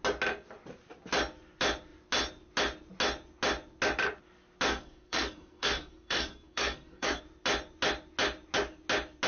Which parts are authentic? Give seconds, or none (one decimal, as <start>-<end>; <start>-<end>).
0.0-4.7; 7.2-9.3